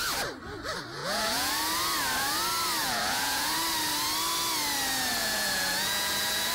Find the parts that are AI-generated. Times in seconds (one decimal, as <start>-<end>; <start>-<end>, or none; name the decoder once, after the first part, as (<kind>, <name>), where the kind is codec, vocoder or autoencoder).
1.0-1.5 (vocoder, Vocos); 2.8-3.5; 5.2-6.5